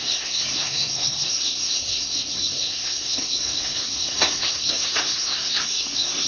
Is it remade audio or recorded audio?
remade